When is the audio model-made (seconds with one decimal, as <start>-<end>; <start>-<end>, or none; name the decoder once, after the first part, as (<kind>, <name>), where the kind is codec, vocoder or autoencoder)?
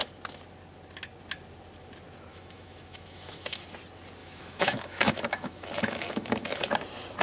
2.3-3.6 (autoencoder, DAC-VAE); 4.2-6.7